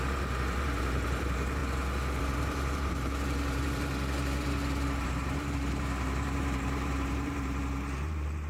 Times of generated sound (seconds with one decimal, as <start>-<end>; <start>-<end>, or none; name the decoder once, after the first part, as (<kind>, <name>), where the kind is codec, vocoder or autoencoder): 0.0-1.6 (vocoder, BigVGAN v2); 2.2-8.5